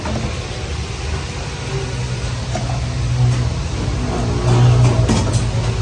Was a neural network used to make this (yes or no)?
no